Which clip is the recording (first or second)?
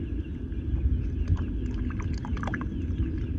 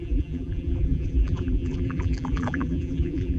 first